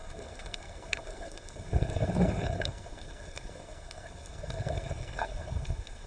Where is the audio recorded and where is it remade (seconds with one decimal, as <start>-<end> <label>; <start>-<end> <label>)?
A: 0.0-6.1 remade

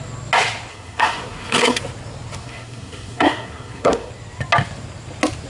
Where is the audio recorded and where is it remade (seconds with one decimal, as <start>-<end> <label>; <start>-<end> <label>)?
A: 0.0-0.7 recorded; 0.7-1.8 remade; 1.8-2.4 recorded; 2.4-4.1 remade; 4.1-5.5 recorded

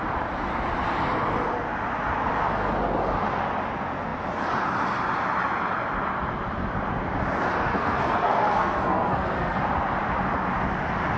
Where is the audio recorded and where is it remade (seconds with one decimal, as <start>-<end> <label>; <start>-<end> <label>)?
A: 0.0-7.7 recorded; 7.7-9.6 remade; 9.6-11.2 recorded

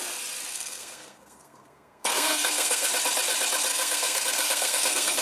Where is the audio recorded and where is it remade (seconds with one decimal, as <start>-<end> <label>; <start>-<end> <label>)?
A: 0.0-0.5 recorded; 0.5-2.9 remade; 2.9-3.7 recorded; 3.7-5.2 remade

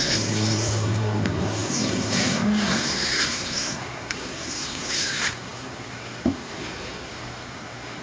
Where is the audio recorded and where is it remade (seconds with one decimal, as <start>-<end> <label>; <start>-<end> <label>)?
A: 0.0-8.0 remade